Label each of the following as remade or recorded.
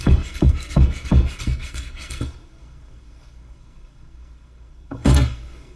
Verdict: remade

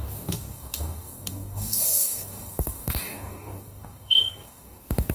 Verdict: remade